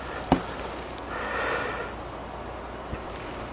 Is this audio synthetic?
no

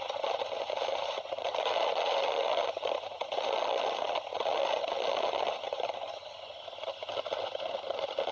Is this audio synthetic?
yes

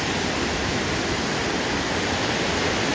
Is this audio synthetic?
no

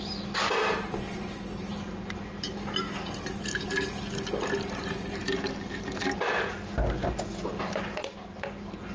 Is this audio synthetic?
no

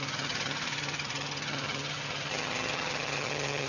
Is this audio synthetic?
yes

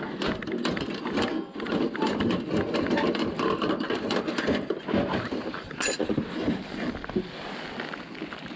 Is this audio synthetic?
no